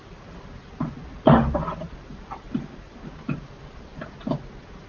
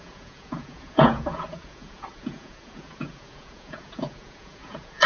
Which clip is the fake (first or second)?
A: second